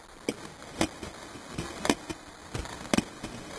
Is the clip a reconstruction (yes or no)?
no